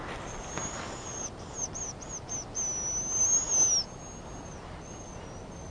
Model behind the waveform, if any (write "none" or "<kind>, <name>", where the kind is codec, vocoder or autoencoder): none